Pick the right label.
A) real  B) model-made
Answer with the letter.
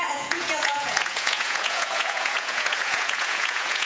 B